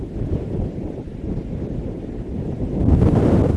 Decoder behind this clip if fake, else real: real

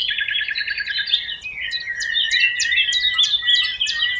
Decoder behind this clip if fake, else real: real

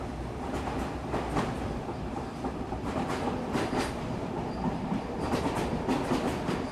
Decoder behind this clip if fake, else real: real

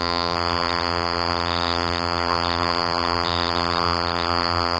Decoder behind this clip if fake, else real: fake, vocoder, BigVGAN v2